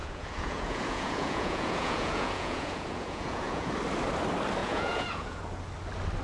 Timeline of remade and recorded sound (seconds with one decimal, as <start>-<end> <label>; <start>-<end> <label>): 0.0-3.7 remade; 3.7-4.6 recorded; 4.6-5.4 remade; 5.4-6.2 recorded